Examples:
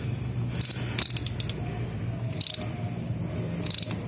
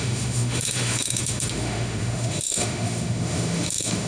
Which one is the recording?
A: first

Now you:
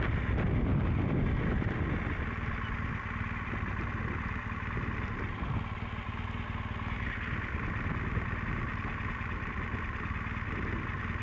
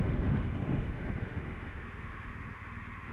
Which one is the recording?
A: first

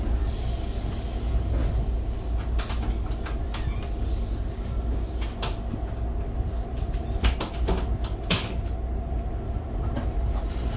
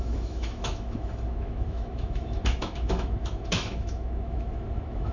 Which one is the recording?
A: first